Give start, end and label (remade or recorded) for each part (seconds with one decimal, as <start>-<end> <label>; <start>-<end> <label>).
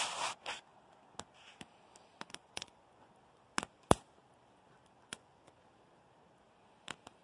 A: 0.0-2.4 recorded; 2.4-3.1 remade; 3.1-5.1 recorded; 5.1-5.7 remade; 5.7-7.2 recorded